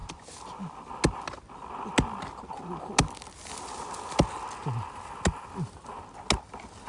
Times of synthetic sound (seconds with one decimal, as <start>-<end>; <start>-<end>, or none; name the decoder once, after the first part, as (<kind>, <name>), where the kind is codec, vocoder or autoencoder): none